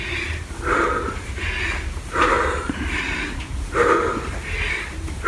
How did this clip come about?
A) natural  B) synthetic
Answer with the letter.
A